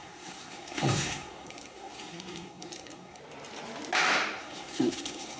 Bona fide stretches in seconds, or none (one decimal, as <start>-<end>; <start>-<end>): 3.2-4.4